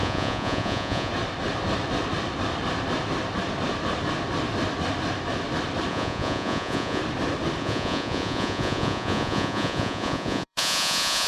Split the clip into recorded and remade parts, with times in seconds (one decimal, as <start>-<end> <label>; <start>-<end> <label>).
0.0-1.1 remade; 1.1-5.9 recorded; 5.9-7.0 remade; 7.0-7.6 recorded; 7.6-11.3 remade